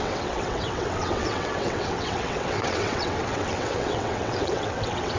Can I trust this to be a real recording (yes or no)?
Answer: no